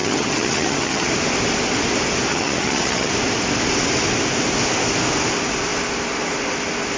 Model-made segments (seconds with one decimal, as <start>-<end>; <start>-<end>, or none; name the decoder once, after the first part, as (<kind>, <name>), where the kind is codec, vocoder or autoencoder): 0.0-1.1 (vocoder, HiFi-GAN); 2.3-3.1